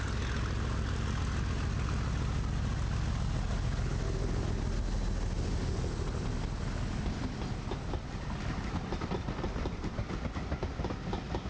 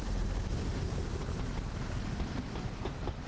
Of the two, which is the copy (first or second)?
second